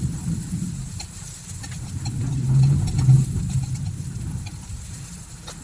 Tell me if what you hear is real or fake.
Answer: real